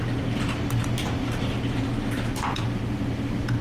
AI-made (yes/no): no